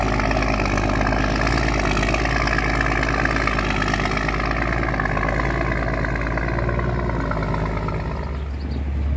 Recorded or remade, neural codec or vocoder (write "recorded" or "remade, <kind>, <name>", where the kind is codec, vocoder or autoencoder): recorded